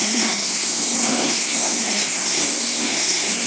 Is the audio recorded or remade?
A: remade